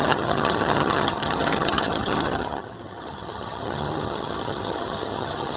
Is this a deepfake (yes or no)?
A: yes